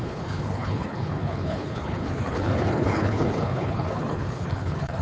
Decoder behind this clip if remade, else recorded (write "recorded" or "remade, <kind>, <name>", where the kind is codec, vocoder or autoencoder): remade, codec, HILCodec